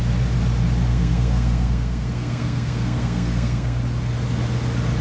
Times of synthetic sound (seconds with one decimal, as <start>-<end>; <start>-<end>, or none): 0.9-3.8